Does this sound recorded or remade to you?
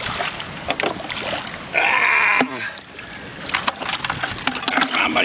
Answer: recorded